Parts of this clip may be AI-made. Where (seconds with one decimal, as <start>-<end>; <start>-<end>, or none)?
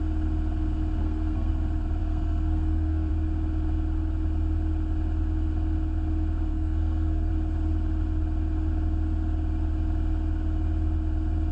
1.0-1.5; 2.0-3.1; 6.5-7.3